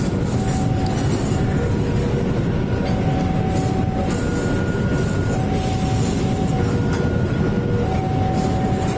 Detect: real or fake real